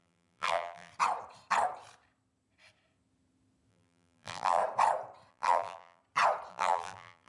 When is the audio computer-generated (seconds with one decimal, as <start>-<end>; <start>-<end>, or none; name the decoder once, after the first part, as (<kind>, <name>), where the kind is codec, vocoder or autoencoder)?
0.0-0.9 (vocoder, BigVGAN v2); 3.7-4.6; 5.3-6.0; 6.5-7.3